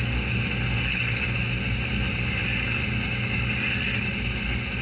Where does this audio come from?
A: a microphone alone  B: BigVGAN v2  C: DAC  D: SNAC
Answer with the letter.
A